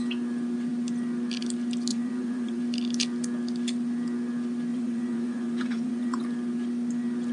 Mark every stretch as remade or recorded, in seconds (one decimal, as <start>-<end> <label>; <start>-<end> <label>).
0.0-1.9 recorded; 1.9-2.6 remade; 2.6-4.7 recorded; 4.7-6.2 remade; 6.2-7.3 recorded